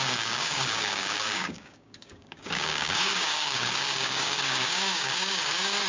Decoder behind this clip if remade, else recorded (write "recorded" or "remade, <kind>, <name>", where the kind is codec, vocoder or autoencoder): remade, codec, DAC